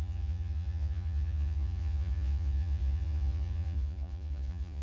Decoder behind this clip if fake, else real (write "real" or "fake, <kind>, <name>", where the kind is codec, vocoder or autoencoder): fake, vocoder, Vocos